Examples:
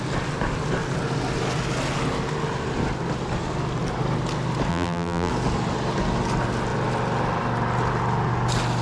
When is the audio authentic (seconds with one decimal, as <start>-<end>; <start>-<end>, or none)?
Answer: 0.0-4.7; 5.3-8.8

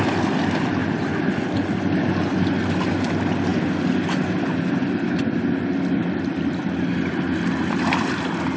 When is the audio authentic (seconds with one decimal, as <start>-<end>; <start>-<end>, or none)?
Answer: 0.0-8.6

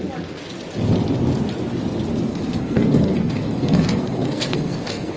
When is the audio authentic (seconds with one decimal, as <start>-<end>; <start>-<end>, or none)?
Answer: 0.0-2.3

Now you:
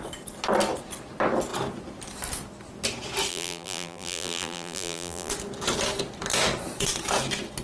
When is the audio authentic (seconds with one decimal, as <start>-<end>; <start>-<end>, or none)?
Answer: 0.0-3.3; 5.3-7.6

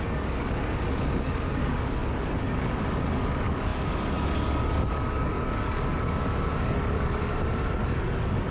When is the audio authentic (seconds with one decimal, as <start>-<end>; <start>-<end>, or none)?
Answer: 7.3-7.8